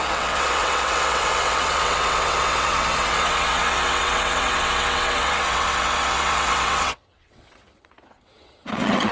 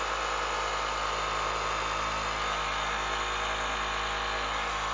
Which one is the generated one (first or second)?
first